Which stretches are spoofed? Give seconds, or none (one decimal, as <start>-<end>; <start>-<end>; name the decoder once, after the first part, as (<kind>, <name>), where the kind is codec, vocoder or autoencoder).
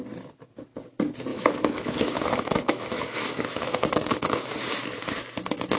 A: 1.3-4.5 (autoencoder, DAC-VAE)